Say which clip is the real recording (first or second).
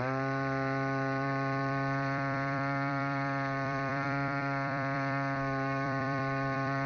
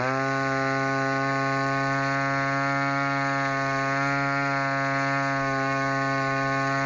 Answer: second